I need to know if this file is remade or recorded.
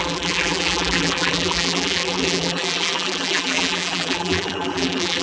remade